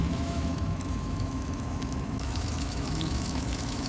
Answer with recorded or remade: remade